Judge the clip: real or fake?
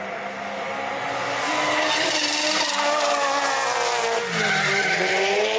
real